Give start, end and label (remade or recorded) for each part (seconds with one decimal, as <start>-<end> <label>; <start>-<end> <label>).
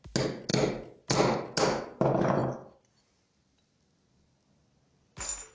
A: 0.0-5.5 recorded